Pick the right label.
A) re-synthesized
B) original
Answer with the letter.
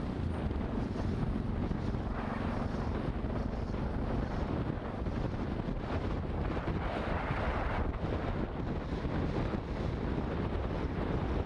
B